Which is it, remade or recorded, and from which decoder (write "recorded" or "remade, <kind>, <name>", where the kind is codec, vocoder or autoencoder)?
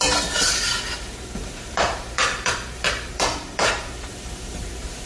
remade, vocoder, BigVGAN v2